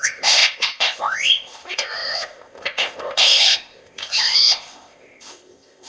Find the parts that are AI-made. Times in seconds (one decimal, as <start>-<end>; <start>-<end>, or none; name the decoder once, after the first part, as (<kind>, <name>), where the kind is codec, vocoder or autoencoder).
0.0-5.9 (codec, ZipCodec)